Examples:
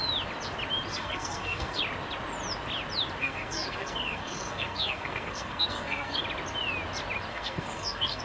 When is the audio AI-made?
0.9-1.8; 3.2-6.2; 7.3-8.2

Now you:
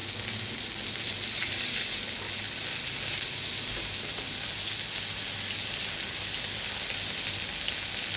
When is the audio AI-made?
none

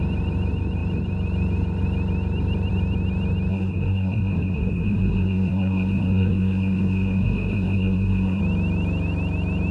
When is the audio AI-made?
3.5-8.4

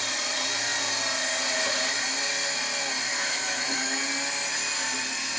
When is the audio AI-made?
3.1-4.0